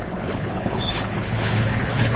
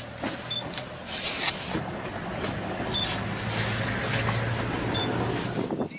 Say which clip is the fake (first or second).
first